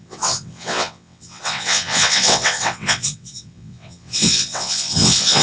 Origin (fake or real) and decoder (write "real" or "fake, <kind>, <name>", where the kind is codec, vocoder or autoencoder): fake, vocoder, WaveNeXt